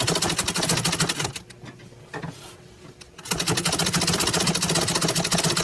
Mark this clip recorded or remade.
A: recorded